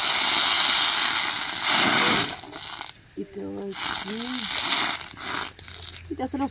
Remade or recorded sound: recorded